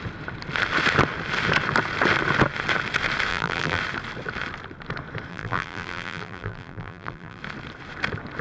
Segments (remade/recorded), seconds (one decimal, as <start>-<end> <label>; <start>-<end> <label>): 0.0-3.3 recorded; 3.3-3.8 remade; 3.8-5.3 recorded; 5.3-7.4 remade; 7.4-8.4 recorded